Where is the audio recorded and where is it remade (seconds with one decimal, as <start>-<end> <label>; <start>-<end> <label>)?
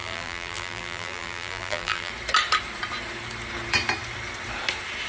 0.0-2.1 remade; 2.1-5.1 recorded